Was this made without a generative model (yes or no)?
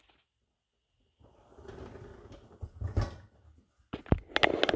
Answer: yes